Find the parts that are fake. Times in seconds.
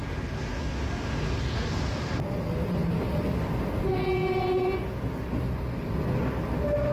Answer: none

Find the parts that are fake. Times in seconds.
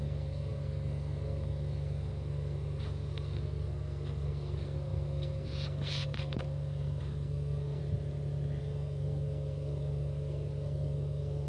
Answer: 0.0-7.8 (codec, SNAC); 8.6-11.5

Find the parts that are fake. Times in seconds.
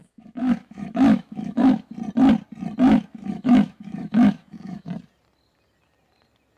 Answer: 0.0-1.9 (autoencoder, DAC-VAE); 2.9-4.9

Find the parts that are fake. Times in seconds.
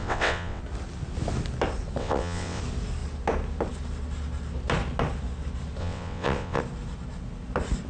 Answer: 0.0-0.6 (vocoder, WaveNeXt); 2.0-2.6; 5.8-6.6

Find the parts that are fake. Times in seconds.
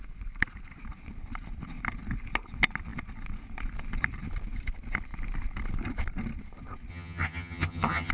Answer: 6.9-8.1 (vocoder, HiFi-GAN)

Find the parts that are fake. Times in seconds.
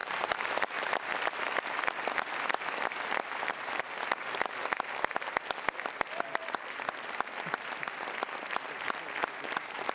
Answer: 0.0-3.8 (vocoder, BigVGAN v2); 6.4-7.1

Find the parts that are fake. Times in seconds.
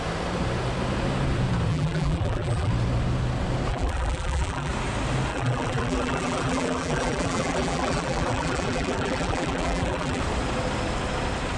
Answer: 1.7-2.7 (vocoder, BigVGAN v2); 3.7-4.7; 5.3-10.2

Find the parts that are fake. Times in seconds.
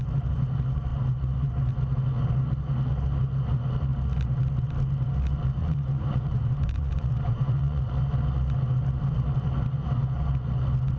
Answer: 5.6-7.9 (vocoder, Vocos)